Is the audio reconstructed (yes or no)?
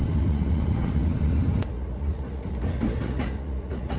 yes